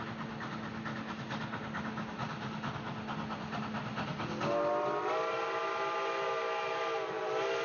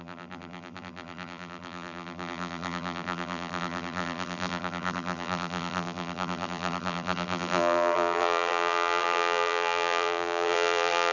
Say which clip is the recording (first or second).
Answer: first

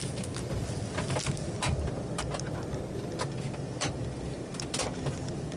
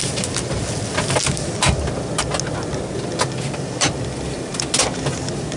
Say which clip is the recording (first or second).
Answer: second